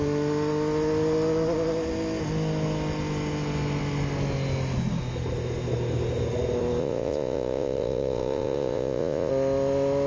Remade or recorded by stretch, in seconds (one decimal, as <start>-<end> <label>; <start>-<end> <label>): 0.0-6.8 recorded; 6.8-9.3 remade; 9.3-10.1 recorded